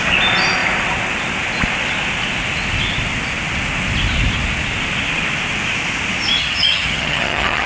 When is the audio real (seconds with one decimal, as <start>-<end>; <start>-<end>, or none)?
0.0-6.4